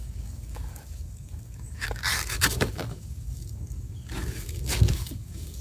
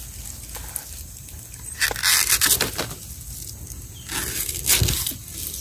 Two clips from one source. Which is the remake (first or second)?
first